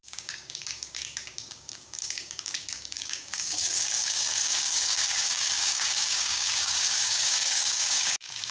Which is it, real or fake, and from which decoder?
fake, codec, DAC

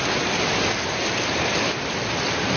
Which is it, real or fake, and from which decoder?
real